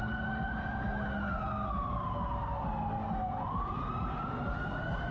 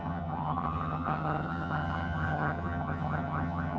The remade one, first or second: second